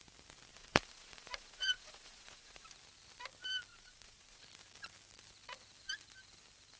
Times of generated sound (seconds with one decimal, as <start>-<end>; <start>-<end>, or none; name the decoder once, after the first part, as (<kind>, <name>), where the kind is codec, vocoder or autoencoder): 0.5-2.7 (vocoder, Vocos); 3.7-4.4